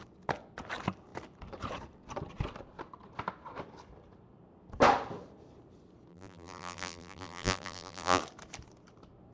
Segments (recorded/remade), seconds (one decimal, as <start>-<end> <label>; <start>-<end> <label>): 0.0-6.1 recorded; 6.1-8.2 remade; 8.2-9.3 recorded